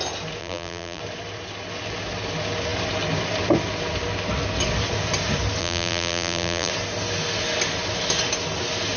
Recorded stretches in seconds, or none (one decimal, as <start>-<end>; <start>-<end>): 0.0-0.4; 1.0-5.6; 6.7-9.0